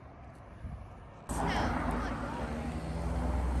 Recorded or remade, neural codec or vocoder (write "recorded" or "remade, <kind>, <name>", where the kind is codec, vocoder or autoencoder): recorded